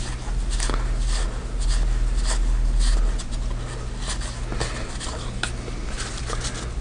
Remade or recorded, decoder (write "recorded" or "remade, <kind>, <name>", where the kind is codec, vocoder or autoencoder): recorded